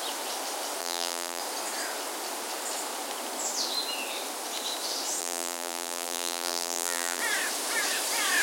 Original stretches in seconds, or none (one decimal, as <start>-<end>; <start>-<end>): 0.0-0.8; 1.4-5.2; 7.2-8.4